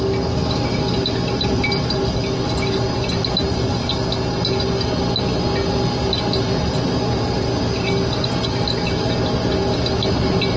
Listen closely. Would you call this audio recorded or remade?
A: recorded